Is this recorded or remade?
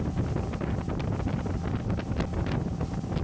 recorded